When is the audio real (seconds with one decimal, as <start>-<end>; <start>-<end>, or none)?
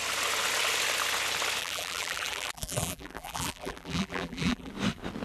0.0-1.6; 4.7-5.2